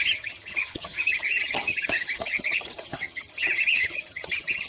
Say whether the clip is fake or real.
fake